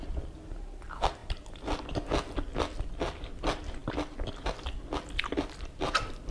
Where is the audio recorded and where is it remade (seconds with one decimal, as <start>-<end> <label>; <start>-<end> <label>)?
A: 0.0-6.3 recorded